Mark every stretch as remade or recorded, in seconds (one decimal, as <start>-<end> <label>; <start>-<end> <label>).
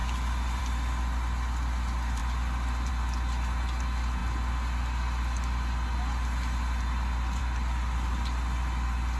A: 0.0-9.2 recorded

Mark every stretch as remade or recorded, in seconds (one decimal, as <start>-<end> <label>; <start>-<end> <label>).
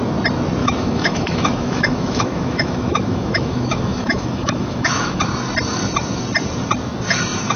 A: 0.0-0.6 recorded; 0.6-5.2 remade; 5.2-7.6 recorded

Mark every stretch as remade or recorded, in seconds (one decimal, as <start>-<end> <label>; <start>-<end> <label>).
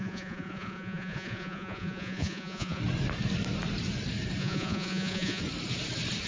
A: 0.0-2.8 remade; 2.8-4.4 recorded; 4.4-5.4 remade; 5.4-6.3 recorded